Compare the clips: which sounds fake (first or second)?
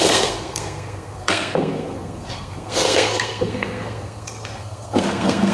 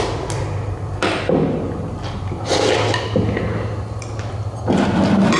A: first